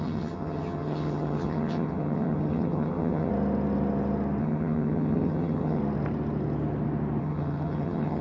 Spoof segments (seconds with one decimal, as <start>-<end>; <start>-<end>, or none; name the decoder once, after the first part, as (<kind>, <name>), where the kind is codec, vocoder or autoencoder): 0.0-3.3 (vocoder, HiFi-GAN); 4.4-5.8; 7.2-8.2